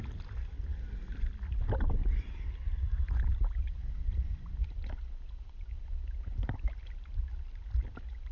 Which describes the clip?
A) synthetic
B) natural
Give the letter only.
B